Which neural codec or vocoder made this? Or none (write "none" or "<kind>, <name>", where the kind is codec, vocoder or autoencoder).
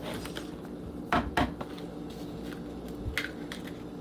none